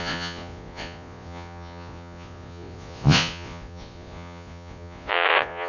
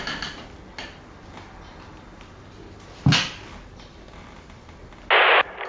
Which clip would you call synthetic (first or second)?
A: first